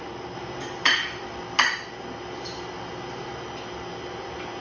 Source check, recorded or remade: recorded